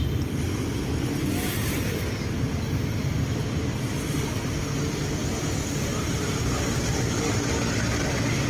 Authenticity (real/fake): real